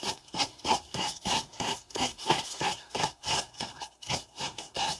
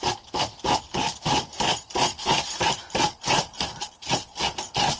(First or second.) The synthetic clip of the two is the first